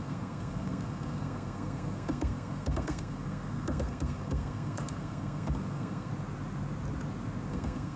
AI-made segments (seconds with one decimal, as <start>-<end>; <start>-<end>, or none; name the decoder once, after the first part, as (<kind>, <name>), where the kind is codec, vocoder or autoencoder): 0.0-6.1 (codec, SNAC); 7.5-8.0